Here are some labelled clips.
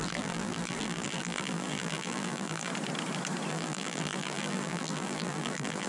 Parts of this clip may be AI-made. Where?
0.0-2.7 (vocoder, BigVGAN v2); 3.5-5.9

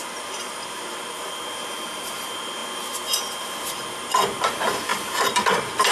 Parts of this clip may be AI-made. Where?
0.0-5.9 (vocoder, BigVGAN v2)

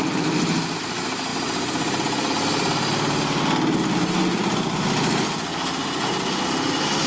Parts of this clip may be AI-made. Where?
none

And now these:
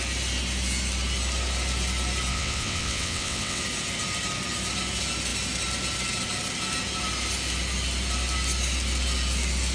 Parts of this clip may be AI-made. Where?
2.3-3.6 (vocoder, WaveNeXt)

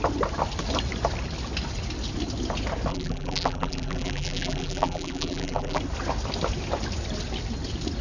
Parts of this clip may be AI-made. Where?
2.9-5.8 (vocoder, BigVGAN v2)

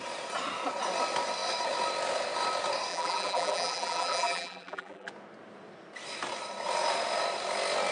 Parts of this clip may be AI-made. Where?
2.9-5.1 (vocoder, BigVGAN v2)

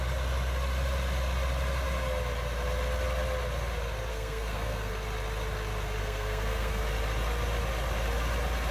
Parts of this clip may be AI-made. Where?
4.1-4.9 (codec, SNAC); 6.0-6.8

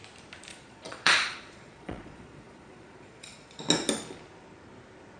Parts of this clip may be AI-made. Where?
0.5-3.6 (vocoder, Vocos)